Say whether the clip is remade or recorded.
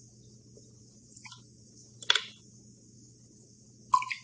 recorded